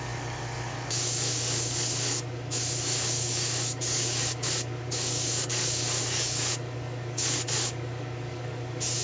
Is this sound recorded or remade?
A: remade